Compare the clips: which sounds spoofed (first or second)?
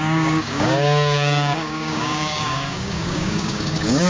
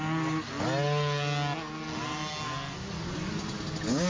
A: first